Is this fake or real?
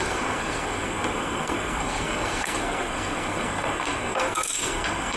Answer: fake